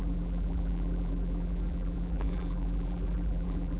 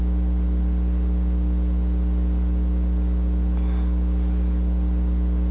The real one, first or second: second